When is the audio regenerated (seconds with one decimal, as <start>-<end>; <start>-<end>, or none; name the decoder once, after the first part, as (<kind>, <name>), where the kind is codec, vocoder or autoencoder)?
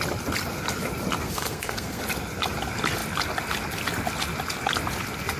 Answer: 1.2-2.0 (codec, SNAC)